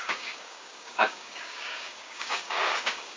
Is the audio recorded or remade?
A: remade